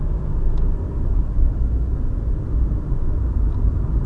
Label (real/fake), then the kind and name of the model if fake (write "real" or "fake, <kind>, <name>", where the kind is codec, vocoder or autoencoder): fake, vocoder, BigVGAN v2